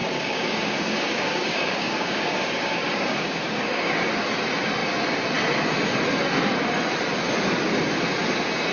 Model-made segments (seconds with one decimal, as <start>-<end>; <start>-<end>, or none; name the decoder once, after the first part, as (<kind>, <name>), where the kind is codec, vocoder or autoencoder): 0.0-4.1 (codec, DAC)